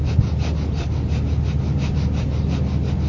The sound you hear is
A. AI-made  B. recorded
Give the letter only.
B